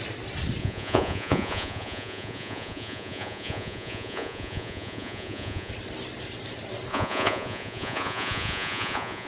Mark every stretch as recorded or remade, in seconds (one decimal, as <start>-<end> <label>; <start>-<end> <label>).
0.0-0.6 recorded; 0.6-5.7 remade; 5.7-6.9 recorded; 6.9-9.3 remade